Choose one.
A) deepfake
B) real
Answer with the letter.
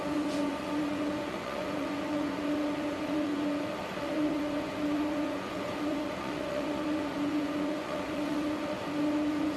A